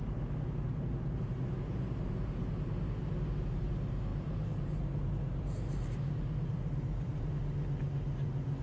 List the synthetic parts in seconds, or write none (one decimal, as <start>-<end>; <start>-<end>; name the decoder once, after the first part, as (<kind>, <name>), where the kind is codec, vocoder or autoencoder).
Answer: 4.1-7.3 (vocoder, BigVGAN v2)

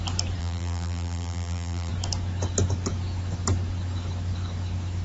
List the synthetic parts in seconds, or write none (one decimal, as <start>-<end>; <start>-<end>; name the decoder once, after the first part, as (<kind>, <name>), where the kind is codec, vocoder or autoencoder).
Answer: 0.4-1.9 (vocoder, BigVGAN v2)

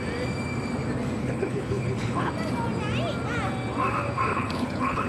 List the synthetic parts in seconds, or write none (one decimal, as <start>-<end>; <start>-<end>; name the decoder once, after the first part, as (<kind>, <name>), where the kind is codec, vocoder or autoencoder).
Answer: 1.2-2.3 (codec, HILCodec); 4.3-5.1

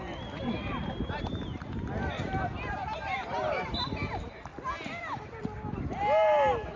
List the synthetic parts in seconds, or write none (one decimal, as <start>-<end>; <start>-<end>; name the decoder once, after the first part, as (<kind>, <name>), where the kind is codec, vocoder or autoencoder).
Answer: 0.0-4.5 (vocoder, BigVGAN v2)